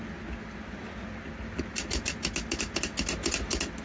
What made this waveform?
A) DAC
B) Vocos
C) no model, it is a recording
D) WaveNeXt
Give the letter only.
C